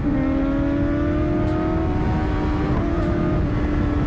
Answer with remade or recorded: recorded